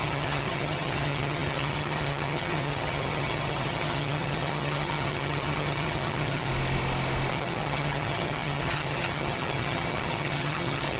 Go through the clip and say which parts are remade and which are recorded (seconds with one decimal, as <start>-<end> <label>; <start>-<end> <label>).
0.0-6.5 remade; 6.5-7.3 recorded; 7.3-11.0 remade